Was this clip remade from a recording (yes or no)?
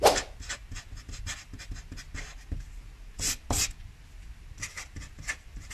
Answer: no